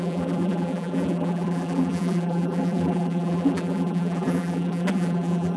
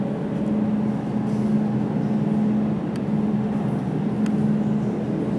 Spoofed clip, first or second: first